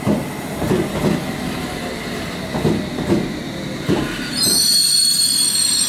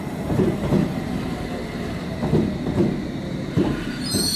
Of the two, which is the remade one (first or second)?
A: second